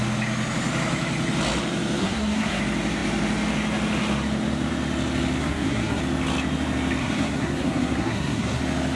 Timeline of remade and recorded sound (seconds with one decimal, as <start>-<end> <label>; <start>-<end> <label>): 0.0-2.0 recorded; 2.0-2.6 remade; 2.6-5.4 recorded; 5.4-6.0 remade; 6.0-7.0 recorded; 7.0-8.6 remade; 8.6-9.0 recorded